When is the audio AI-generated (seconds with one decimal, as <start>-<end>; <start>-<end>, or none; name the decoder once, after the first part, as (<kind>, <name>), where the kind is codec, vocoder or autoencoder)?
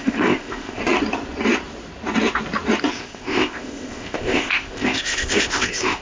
0.0-0.8 (codec, ZipCodec); 2.9-6.0